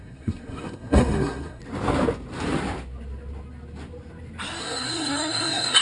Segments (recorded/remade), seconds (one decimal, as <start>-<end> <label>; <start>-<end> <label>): 0.0-1.6 remade; 1.6-4.6 recorded; 4.6-5.8 remade